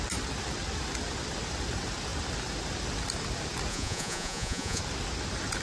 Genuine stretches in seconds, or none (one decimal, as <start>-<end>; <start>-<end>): 0.0-3.7; 4.8-5.6